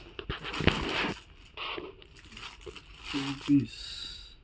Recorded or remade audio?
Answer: recorded